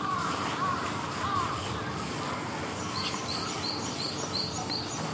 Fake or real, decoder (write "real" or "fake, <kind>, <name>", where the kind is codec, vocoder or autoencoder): real